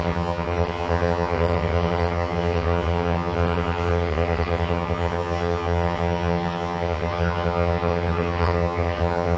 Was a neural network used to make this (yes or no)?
yes